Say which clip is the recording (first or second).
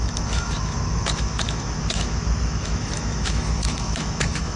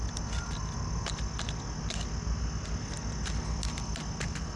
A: second